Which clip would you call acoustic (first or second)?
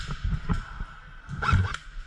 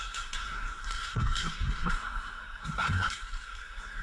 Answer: first